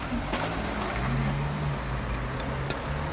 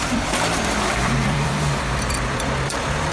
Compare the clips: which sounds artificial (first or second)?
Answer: second